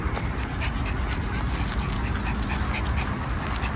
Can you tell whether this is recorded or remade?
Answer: recorded